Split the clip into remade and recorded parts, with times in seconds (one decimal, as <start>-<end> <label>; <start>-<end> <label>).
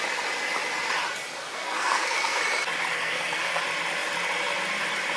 0.0-1.4 recorded; 1.4-2.4 remade; 2.4-2.9 recorded; 2.9-3.6 remade; 3.6-5.2 recorded